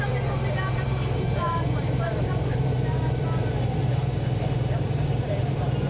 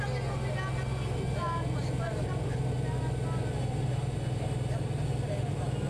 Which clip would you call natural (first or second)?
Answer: second